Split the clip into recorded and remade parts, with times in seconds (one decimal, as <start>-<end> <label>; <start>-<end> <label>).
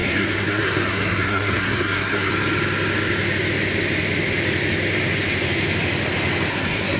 0.0-2.3 remade; 2.3-6.5 recorded; 6.5-7.0 remade